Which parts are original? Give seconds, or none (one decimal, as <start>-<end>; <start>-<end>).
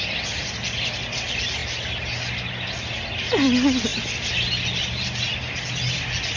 0.0-6.4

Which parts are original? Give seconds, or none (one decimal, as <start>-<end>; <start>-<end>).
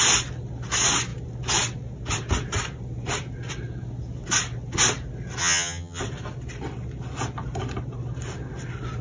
0.0-5.4; 6.0-9.0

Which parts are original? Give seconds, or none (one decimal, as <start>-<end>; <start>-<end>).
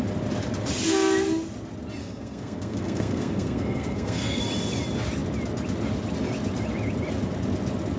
0.0-2.0; 4.4-8.0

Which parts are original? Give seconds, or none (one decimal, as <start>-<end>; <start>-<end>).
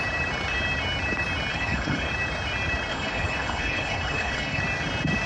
0.0-1.5; 2.1-2.9; 4.6-5.3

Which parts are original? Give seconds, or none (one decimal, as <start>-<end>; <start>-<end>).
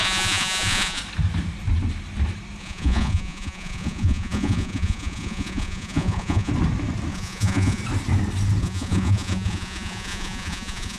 1.0-2.6; 6.5-7.1; 7.8-8.6